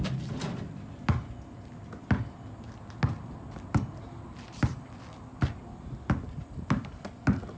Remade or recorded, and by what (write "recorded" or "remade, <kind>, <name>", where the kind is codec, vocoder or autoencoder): recorded